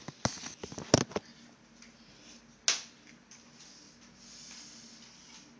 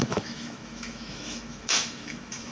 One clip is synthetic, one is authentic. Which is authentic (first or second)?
first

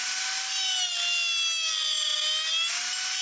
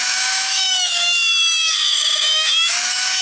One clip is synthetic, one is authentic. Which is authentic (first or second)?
first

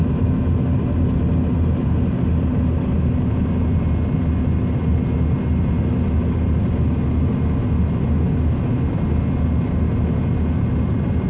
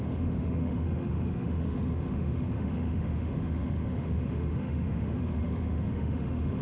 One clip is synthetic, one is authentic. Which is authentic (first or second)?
first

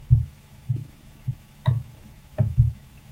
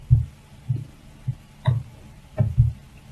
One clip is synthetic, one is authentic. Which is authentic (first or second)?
second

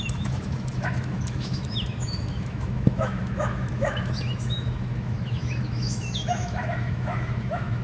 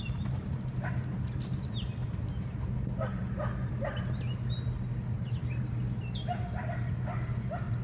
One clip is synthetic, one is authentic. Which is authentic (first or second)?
second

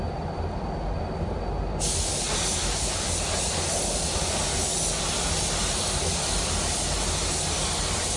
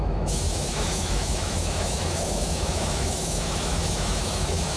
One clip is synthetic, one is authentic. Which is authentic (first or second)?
first